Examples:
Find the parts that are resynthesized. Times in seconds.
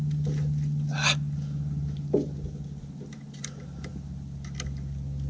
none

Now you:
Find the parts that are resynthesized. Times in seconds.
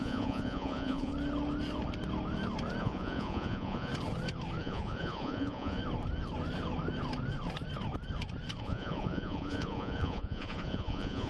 0.0-1.1 (vocoder, Vocos); 2.8-3.9; 4.6-5.8; 8.6-11.3